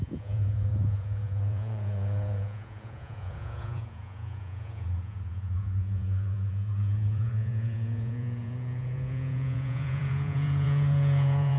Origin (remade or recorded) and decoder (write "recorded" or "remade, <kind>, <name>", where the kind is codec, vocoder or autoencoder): remade, vocoder, Vocos